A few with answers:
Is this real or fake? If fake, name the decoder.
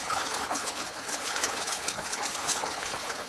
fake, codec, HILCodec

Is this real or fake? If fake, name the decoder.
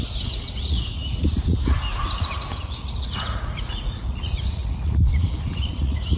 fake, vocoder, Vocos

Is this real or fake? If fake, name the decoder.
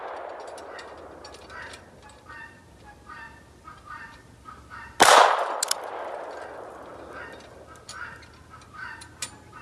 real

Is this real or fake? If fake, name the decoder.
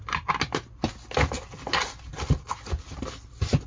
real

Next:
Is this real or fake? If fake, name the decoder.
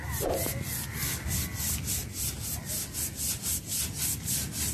real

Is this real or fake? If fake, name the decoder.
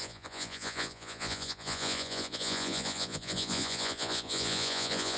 fake, vocoder, Vocos